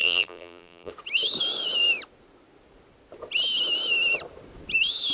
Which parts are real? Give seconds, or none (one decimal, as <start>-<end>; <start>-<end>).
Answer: 0.9-5.1